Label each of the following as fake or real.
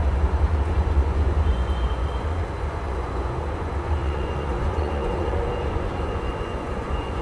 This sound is fake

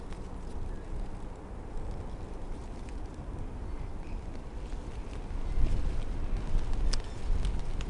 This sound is real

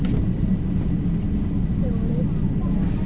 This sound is real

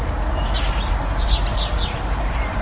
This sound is real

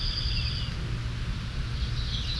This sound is real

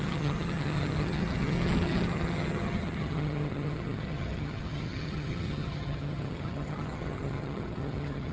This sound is fake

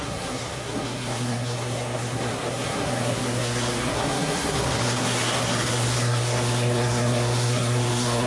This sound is fake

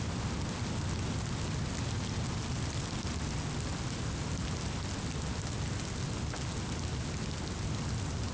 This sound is real